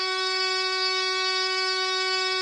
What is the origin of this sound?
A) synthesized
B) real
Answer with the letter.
A